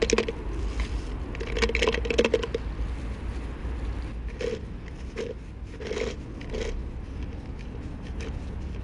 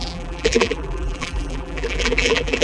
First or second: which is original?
first